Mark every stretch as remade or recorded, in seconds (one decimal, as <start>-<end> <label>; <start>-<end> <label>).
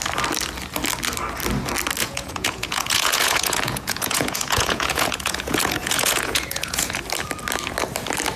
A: 0.0-2.0 recorded; 2.0-7.0 remade; 7.0-8.4 recorded